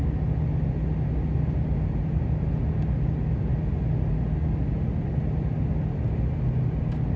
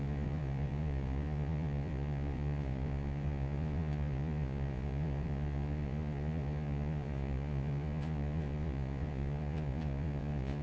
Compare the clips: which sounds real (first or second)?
first